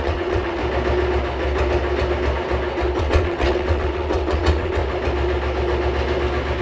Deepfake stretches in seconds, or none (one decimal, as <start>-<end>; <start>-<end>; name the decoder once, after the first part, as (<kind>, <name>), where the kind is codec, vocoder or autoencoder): 0.0-0.6 (vocoder, WaveNeXt); 3.0-4.8